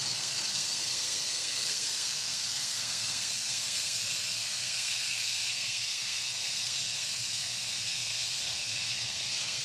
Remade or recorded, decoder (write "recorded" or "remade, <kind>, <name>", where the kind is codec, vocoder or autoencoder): remade, codec, SNAC